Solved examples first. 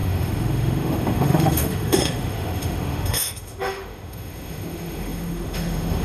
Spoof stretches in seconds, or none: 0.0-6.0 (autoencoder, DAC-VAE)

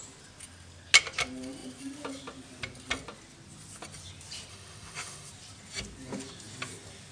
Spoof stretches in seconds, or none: 4.5-5.3 (autoencoder, DAC-VAE)

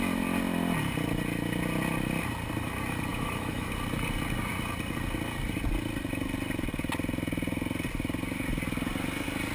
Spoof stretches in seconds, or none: 3.1-3.7 (autoencoder, DAC-VAE)

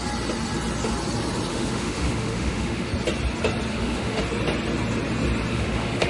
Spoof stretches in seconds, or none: 1.5-2.9 (autoencoder, DAC-VAE); 3.7-4.2; 5.5-6.1